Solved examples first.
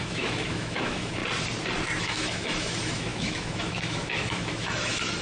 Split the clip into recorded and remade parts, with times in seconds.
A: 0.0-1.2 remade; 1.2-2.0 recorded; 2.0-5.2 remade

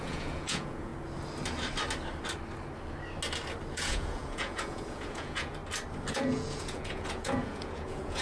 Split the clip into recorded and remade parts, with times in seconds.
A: 0.0-0.9 remade; 0.9-3.7 recorded; 3.7-5.6 remade; 5.6-6.1 recorded; 6.1-8.2 remade

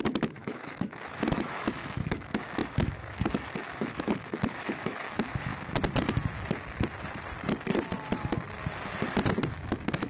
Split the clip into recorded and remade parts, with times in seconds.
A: 0.0-5.5 remade; 5.5-9.5 recorded; 9.5-10.1 remade

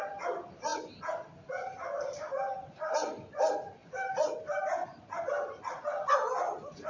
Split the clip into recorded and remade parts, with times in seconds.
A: 0.0-6.9 recorded

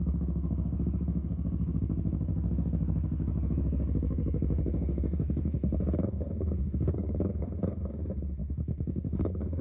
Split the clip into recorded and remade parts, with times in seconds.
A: 0.0-9.6 remade

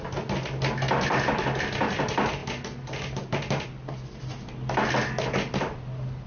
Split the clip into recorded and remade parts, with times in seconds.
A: 0.0-6.3 recorded

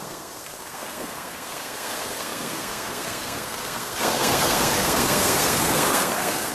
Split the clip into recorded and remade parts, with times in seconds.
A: 0.0-6.5 remade